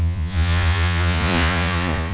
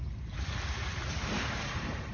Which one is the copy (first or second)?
first